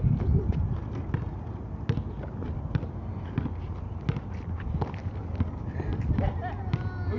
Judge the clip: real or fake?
real